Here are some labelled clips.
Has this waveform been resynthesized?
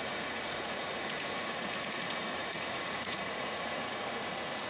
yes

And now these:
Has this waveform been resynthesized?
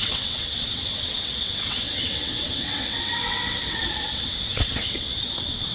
yes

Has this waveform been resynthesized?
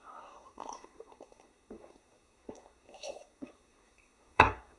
yes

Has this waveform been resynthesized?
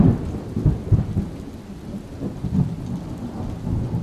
no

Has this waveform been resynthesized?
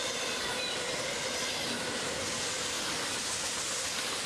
no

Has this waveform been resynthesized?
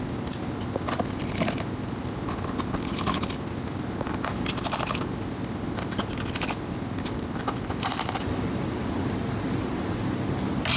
no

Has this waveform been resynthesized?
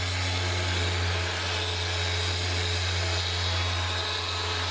no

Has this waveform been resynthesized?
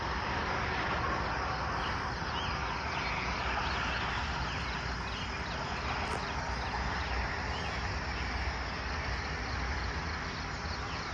no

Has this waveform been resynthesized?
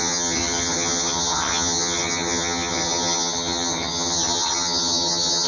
yes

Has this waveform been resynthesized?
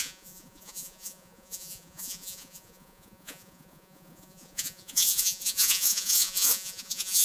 yes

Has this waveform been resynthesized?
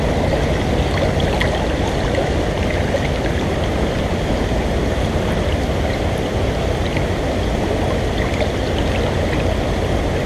no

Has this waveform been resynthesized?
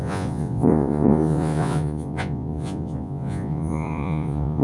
yes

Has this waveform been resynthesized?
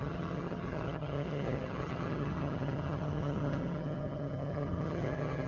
yes